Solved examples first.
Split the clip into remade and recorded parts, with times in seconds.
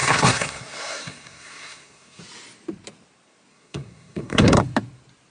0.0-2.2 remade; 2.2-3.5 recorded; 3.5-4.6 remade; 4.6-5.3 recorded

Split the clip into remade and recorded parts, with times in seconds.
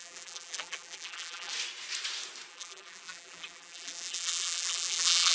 0.0-1.5 remade; 1.5-2.5 recorded; 2.5-5.3 remade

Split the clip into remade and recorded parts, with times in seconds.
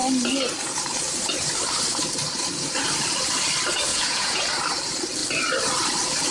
0.0-3.9 recorded; 3.9-4.4 remade; 4.4-6.3 recorded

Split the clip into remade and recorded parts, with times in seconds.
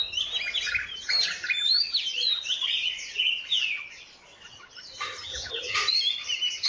0.0-2.2 recorded; 2.2-4.8 remade; 4.8-5.3 recorded; 5.3-6.0 remade; 6.0-6.7 recorded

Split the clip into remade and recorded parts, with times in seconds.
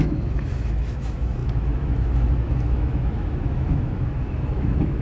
0.0-5.0 remade